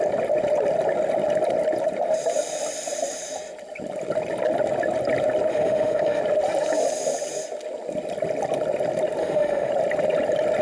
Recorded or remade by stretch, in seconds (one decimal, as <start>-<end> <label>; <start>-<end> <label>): 0.0-5.5 recorded; 5.5-6.2 remade; 6.2-9.2 recorded; 9.2-9.7 remade; 9.7-10.6 recorded